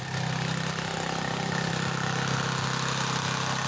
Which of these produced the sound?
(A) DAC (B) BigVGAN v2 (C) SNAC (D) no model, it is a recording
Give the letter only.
D